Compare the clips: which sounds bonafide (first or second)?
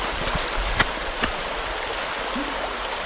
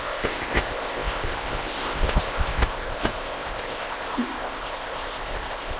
first